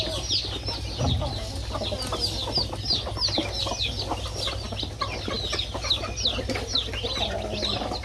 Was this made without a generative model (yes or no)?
yes